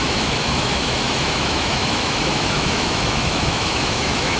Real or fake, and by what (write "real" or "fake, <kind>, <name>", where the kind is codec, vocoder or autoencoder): fake, autoencoder, DAC-VAE